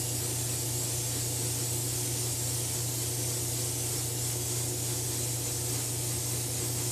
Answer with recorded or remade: recorded